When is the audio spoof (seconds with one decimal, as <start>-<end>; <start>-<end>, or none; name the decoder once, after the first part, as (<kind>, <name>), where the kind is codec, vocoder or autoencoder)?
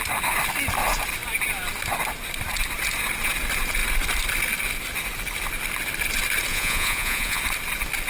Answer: 6.5-7.4 (vocoder, Vocos)